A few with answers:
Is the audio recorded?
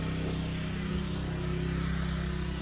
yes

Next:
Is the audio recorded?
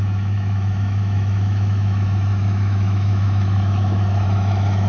no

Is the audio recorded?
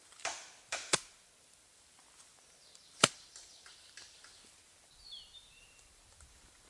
no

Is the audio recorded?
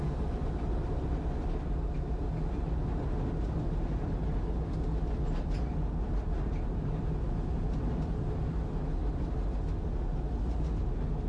yes